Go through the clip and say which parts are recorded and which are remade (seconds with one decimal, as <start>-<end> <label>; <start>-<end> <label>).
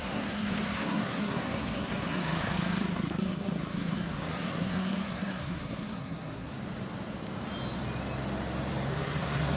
0.0-6.5 remade; 6.5-8.9 recorded; 8.9-9.6 remade